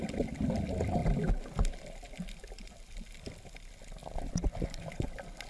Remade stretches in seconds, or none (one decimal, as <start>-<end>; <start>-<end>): 4.0-5.1